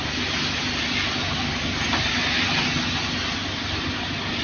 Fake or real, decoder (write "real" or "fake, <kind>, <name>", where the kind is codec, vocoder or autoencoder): real